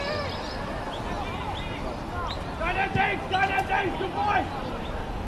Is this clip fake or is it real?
real